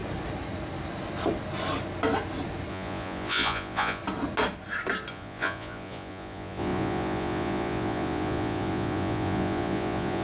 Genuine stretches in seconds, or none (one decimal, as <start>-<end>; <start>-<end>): 0.0-2.7; 4.0-5.1